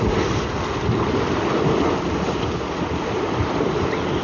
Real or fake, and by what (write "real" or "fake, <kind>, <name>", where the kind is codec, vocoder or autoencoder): real